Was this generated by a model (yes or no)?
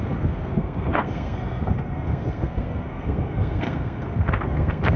yes